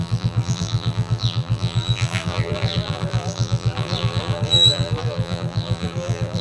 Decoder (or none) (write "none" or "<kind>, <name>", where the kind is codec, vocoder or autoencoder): vocoder, BigVGAN v2